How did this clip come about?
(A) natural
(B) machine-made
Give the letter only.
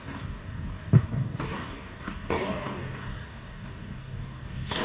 B